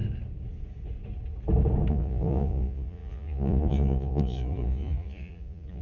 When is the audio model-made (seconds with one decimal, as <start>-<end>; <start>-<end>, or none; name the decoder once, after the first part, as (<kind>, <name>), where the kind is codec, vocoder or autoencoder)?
1.9-5.8 (vocoder, Vocos)